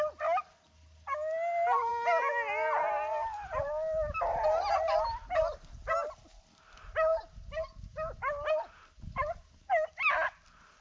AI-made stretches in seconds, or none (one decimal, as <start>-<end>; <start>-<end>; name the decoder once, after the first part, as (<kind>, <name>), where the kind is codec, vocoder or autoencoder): none

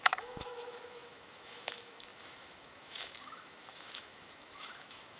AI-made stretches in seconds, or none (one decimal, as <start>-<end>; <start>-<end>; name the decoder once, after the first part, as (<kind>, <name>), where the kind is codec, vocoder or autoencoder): 0.0-5.2 (autoencoder, DAC-VAE)

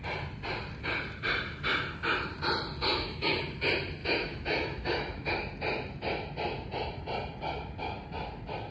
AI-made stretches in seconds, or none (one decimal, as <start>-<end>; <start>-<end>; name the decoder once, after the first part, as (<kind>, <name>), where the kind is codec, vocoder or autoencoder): 2.9-3.4 (autoencoder, DAC-VAE); 4.0-5.3

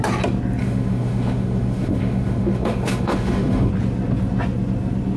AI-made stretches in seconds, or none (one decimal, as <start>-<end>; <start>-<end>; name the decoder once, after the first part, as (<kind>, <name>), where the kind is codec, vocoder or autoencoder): 0.6-3.7 (autoencoder, DAC-VAE)

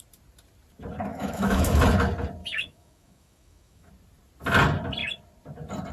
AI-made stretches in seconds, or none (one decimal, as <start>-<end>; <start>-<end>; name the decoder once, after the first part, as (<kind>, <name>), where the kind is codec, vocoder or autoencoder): 1.1-1.8 (autoencoder, DAC-VAE); 2.4-3.9

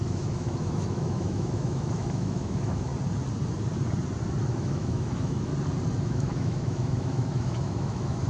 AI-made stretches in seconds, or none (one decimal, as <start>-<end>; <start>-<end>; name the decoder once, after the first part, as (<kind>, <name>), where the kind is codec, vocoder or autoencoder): 0.0-2.9 (autoencoder, DAC-VAE); 4.4-5.5; 6.0-8.3